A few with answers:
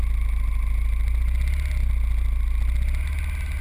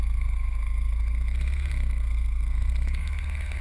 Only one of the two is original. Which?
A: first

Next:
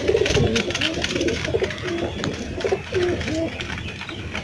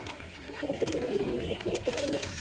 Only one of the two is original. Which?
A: first